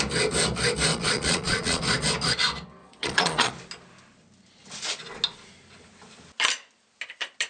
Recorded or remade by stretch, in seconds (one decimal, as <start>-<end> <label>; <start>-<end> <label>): 0.0-0.9 recorded; 0.9-1.8 remade; 1.8-2.8 recorded; 2.8-3.5 remade; 3.5-7.5 recorded

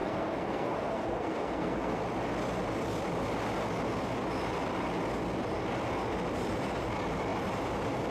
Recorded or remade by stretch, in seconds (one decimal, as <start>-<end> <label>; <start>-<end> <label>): 0.0-2.0 remade; 2.0-8.1 recorded

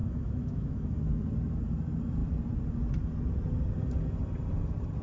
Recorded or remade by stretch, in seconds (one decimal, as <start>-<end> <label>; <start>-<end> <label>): 0.0-1.1 remade; 1.1-5.0 recorded

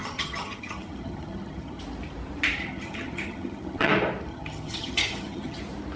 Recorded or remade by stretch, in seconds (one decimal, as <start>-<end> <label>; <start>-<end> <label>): 0.0-1.8 remade; 1.8-2.6 recorded; 2.6-3.9 remade; 3.9-4.3 recorded; 4.3-5.6 remade; 5.6-6.0 recorded

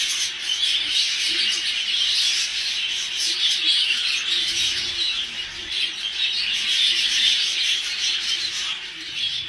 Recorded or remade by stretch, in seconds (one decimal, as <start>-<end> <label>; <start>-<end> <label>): 0.0-2.5 recorded; 2.5-3.1 remade; 3.1-5.6 recorded; 5.6-6.3 remade; 6.3-9.5 recorded

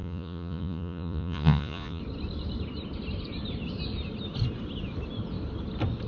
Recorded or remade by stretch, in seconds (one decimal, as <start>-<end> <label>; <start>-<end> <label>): 0.0-2.0 remade; 2.0-6.1 recorded

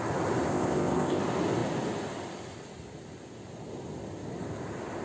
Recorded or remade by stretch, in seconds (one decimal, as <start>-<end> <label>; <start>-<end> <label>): 0.0-0.5 recorded; 0.5-1.2 remade; 1.2-5.0 recorded

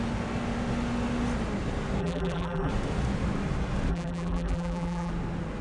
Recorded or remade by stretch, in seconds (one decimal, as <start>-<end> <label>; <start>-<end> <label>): 0.0-2.0 recorded; 2.0-2.7 remade; 2.7-3.9 recorded; 3.9-5.1 remade; 5.1-5.6 recorded